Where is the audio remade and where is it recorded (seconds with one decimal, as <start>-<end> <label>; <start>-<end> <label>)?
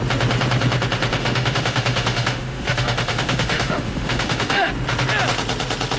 0.0-1.2 recorded; 1.2-4.7 remade; 4.7-6.0 recorded